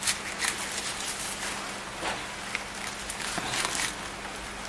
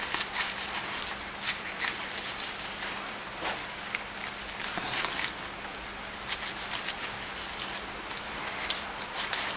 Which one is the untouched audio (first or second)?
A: first